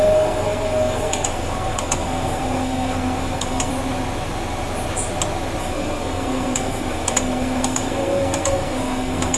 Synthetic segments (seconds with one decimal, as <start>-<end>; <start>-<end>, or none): 0.0-3.7; 5.6-9.4

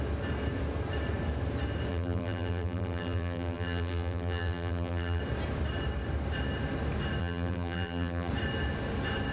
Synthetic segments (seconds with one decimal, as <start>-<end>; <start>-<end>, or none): 1.9-5.2; 7.2-8.3

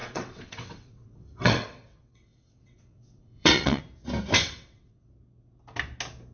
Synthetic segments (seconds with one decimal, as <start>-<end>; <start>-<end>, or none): 0.0-3.8; 4.4-5.1

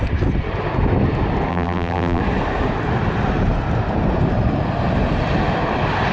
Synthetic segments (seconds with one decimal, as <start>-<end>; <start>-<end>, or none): 1.5-2.2

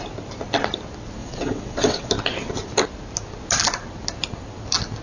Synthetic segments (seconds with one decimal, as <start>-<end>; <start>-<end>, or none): 1.2-2.1

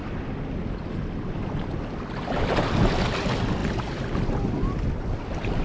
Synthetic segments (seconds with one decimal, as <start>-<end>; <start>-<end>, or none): 3.6-4.5

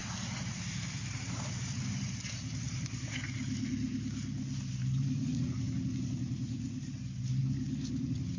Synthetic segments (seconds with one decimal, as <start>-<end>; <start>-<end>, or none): 0.0-3.7

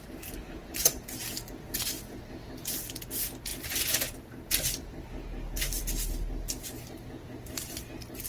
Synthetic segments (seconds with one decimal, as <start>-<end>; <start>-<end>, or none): none